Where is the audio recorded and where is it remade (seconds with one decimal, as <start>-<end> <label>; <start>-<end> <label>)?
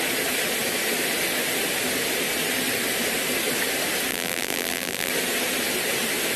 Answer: 0.0-4.1 recorded; 4.1-5.1 remade; 5.1-6.4 recorded